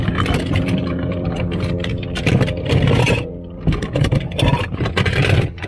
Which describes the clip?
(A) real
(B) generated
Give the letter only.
B